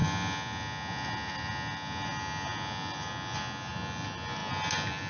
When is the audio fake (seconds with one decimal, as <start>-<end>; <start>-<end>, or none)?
none